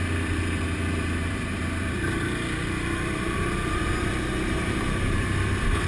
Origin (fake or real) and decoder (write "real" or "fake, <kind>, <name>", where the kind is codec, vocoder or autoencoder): fake, vocoder, BigVGAN v2